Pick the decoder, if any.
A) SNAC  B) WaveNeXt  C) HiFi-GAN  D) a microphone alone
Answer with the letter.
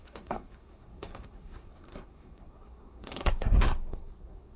A